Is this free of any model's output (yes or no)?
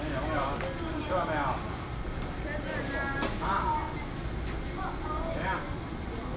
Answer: yes